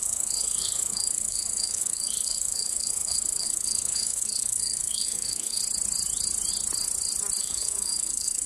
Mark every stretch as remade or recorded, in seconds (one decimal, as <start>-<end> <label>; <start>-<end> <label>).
0.0-5.6 remade; 5.6-7.4 recorded; 7.4-8.5 remade